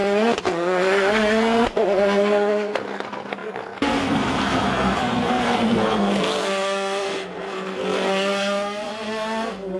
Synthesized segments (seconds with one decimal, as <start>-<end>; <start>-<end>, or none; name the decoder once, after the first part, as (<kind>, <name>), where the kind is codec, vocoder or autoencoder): 0.0-9.8 (codec, SNAC)